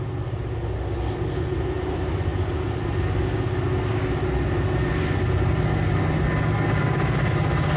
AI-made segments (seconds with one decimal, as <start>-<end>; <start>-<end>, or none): none